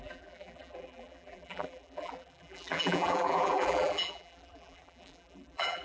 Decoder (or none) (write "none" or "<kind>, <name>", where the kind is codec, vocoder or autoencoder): vocoder, BigVGAN v2